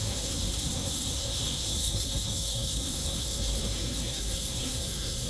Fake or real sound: fake